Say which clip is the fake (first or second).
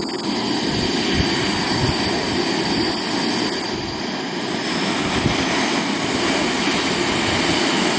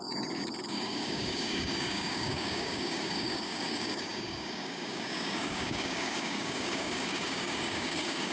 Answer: second